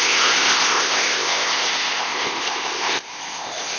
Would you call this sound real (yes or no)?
no